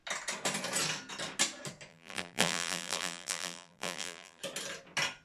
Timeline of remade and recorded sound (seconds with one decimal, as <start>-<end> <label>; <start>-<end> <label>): 0.0-1.9 recorded; 1.9-4.4 remade; 4.4-5.2 recorded